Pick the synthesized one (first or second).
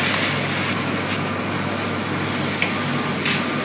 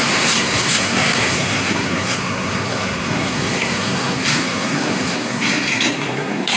second